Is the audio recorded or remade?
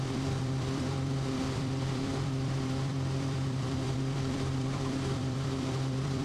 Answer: remade